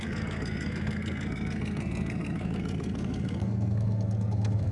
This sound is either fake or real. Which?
fake